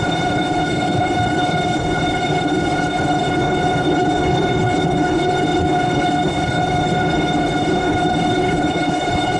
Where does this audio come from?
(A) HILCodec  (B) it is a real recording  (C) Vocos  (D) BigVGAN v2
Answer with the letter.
A